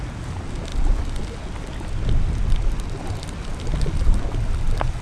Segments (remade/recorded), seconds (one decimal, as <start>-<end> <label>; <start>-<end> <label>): 0.0-5.0 recorded